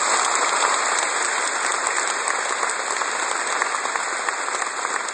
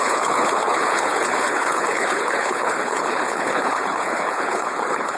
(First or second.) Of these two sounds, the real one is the first